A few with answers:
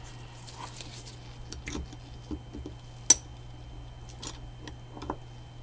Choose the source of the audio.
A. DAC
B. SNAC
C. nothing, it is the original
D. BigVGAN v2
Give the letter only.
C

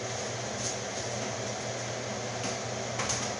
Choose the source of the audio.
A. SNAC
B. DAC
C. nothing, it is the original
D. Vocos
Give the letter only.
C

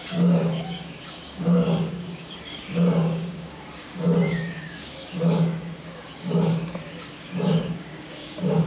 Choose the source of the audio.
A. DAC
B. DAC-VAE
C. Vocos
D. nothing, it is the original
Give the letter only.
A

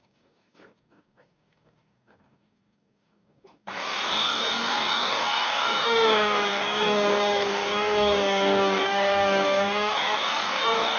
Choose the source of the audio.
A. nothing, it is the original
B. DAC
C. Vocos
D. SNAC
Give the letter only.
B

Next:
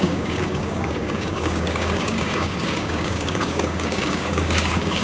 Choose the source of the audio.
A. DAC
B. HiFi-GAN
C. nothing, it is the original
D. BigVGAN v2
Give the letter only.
A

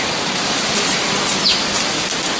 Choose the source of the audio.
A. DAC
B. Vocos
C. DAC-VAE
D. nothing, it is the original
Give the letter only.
D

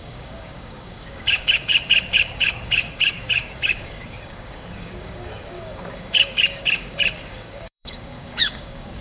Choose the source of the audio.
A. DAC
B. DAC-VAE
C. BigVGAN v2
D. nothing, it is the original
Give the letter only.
A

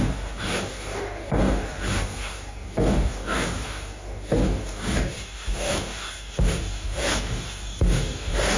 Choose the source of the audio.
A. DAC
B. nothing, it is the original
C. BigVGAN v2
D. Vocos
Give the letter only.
A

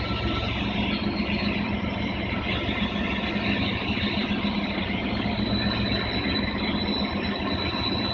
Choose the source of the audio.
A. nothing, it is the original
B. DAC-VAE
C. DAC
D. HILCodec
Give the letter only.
A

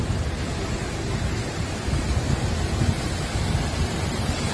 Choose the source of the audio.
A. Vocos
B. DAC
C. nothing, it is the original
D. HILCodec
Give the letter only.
C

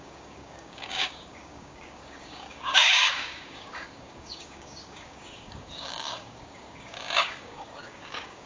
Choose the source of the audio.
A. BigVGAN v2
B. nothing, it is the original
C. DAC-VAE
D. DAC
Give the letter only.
D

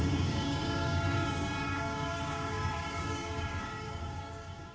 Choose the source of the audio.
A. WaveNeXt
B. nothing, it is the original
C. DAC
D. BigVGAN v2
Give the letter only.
C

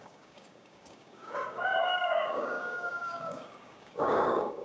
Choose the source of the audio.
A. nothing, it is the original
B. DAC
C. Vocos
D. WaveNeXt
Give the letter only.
B